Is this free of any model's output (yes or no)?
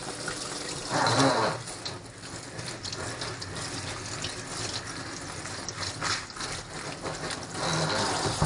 yes